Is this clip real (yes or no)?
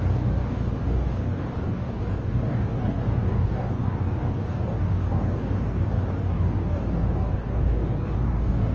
no